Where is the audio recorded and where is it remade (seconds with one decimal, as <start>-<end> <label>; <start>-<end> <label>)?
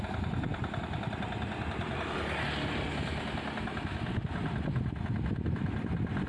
0.0-6.3 recorded